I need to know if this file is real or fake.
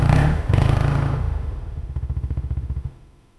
fake